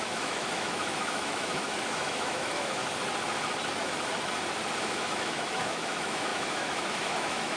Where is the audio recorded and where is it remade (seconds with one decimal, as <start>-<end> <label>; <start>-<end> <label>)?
0.0-2.8 remade; 2.8-4.8 recorded; 4.8-7.6 remade